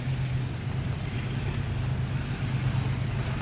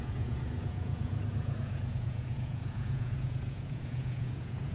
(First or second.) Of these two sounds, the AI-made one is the second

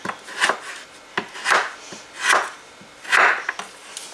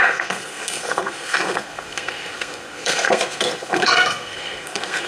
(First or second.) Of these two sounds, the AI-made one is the second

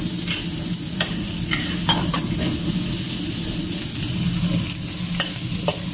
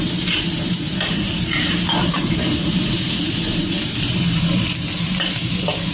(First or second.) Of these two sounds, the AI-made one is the second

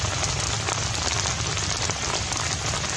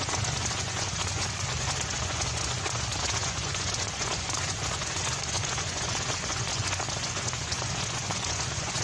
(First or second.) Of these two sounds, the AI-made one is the second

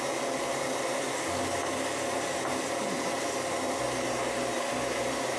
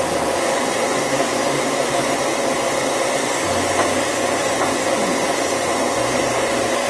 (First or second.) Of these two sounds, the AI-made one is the second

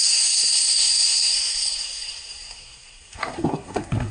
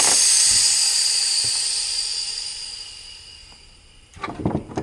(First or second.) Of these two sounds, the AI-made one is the first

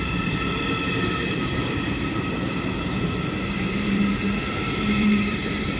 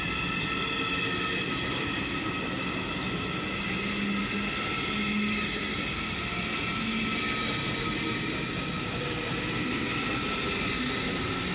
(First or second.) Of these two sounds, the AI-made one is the first